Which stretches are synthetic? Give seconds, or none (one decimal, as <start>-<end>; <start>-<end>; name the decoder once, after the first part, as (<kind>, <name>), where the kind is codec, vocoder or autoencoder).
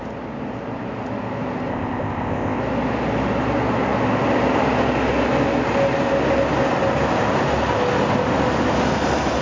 1.7-2.6 (codec, ZipCodec)